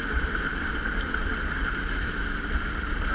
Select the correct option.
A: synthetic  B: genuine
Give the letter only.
A